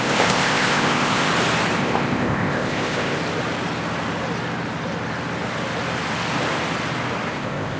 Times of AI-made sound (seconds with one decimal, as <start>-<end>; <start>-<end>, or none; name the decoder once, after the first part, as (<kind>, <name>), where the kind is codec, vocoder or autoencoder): 0.0-1.3 (codec, ZipCodec); 1.8-3.2; 7.3-7.8